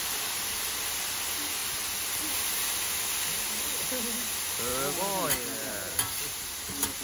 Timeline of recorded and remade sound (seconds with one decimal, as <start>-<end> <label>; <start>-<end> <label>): 0.0-7.0 recorded